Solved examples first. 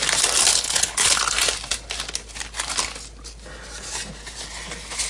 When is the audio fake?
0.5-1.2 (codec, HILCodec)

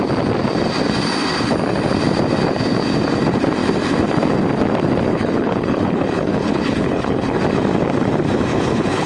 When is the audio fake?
5.1-7.4 (codec, HILCodec); 8.5-9.1

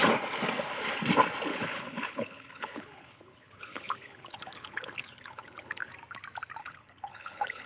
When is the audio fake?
1.5-5.9 (codec, HILCodec); 6.6-7.7

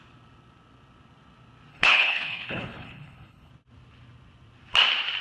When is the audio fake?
1.7-3.5 (codec, HILCodec)

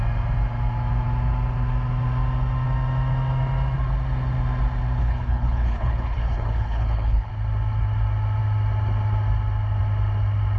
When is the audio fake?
5.0-7.3 (codec, HILCodec)